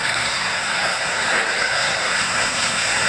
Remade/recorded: remade